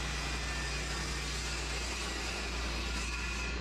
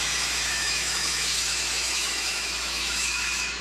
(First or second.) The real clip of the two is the first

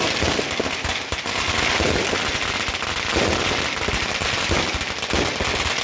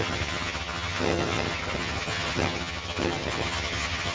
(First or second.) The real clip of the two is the first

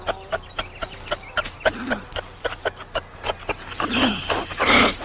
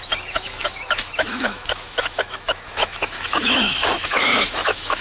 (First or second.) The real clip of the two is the first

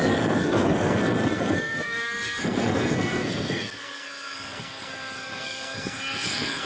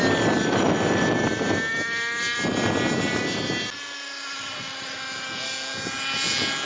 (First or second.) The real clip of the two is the second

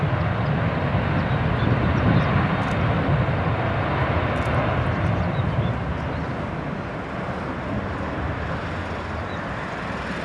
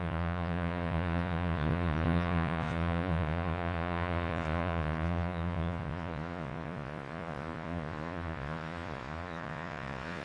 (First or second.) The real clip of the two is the first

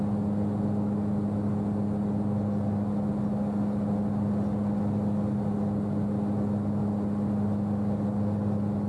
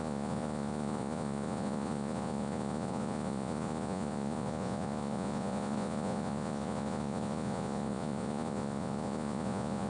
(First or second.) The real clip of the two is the first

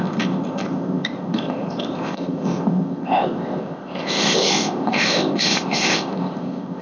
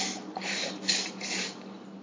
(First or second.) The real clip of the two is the second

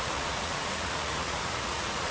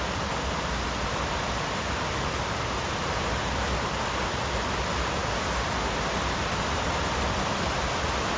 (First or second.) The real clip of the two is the second